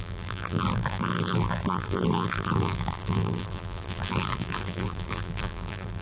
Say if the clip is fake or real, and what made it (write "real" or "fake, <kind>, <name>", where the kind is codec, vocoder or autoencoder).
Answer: fake, vocoder, BigVGAN v2